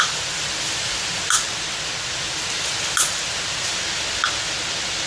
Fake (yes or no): no